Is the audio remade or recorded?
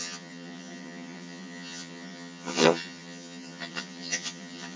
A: remade